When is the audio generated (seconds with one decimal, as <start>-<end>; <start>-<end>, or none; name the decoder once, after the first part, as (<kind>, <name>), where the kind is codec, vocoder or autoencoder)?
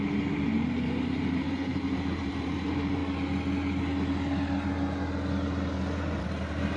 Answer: 0.0-3.0 (vocoder, BigVGAN v2); 6.2-6.8